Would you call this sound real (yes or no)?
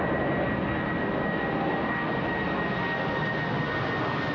yes